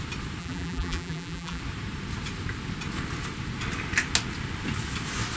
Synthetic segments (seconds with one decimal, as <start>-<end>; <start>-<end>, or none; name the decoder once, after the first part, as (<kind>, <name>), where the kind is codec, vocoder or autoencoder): 0.4-1.6 (vocoder, BigVGAN v2)